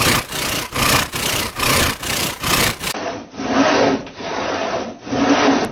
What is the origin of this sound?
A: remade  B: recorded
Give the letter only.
A